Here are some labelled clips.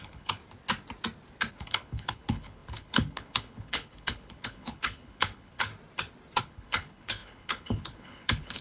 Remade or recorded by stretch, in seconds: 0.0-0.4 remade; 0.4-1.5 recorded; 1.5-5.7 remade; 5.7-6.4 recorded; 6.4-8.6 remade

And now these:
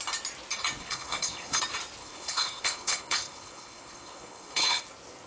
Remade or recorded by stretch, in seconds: 0.0-0.8 recorded; 0.8-1.6 remade; 1.6-2.0 recorded; 2.0-4.8 remade; 4.8-5.3 recorded

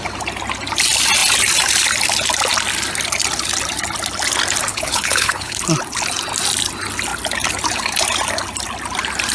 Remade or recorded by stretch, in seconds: 0.0-4.7 recorded; 4.7-5.6 remade; 5.6-9.3 recorded

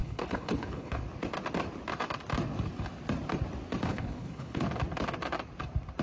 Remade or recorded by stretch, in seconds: 0.0-1.0 remade; 1.0-3.9 recorded; 3.9-4.6 remade; 4.6-6.0 recorded

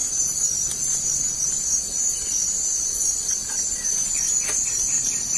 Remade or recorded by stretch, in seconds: 0.0-5.4 recorded

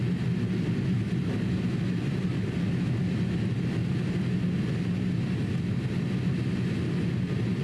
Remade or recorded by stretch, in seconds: 0.0-7.6 recorded

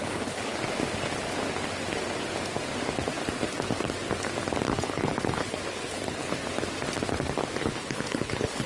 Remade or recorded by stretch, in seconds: 0.0-0.5 remade; 0.5-4.8 recorded; 4.8-6.4 remade; 6.4-7.6 recorded; 7.6-8.7 remade

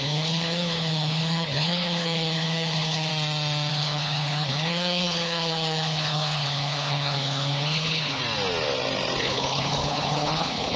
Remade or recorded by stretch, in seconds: 0.0-3.1 remade; 3.1-3.7 recorded; 3.7-8.2 remade; 8.2-9.2 recorded; 9.2-10.8 remade